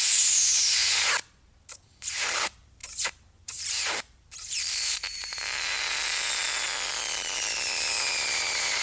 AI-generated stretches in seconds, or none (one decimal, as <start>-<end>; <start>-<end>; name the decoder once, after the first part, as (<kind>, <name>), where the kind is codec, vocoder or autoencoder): 0.0-0.8 (vocoder, BigVGAN v2); 1.7-8.8